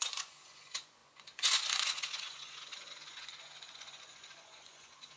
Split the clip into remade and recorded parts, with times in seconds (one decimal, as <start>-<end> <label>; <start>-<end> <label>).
0.0-5.2 remade